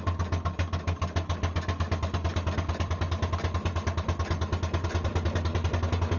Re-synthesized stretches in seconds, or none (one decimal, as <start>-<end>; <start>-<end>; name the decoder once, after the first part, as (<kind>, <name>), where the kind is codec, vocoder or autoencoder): 2.3-3.0 (vocoder, BigVGAN v2)